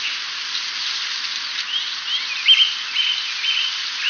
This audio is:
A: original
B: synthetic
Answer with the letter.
A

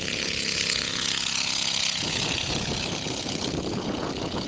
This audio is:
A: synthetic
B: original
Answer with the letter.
A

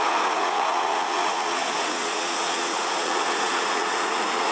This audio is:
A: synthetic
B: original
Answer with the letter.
A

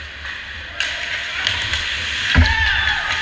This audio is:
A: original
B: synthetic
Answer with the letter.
A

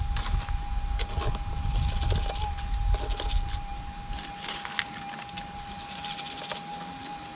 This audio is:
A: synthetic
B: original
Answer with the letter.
B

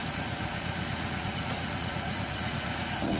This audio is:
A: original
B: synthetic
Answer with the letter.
B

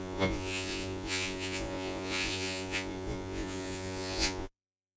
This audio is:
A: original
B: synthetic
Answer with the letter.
B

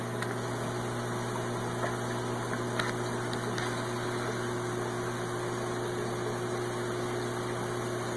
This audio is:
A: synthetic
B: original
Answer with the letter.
B